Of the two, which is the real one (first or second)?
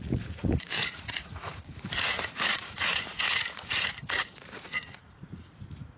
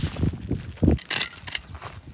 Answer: second